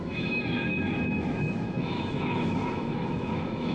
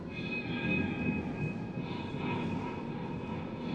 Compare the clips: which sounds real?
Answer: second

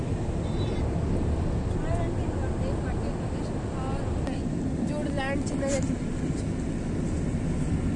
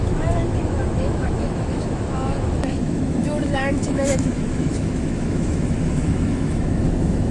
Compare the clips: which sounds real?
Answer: first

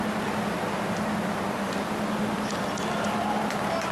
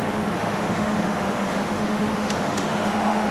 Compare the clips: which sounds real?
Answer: first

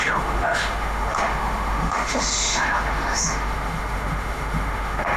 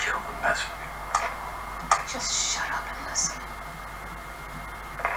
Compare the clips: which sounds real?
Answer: second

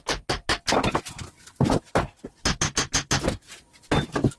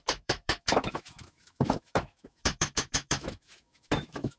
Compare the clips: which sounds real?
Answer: first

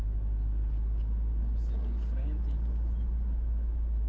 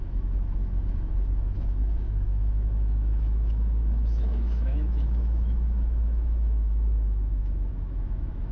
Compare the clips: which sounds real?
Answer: first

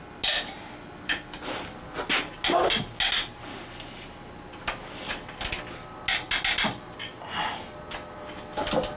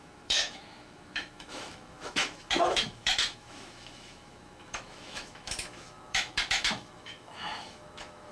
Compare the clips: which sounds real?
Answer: first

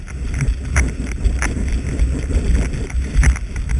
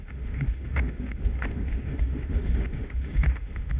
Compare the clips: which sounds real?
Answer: first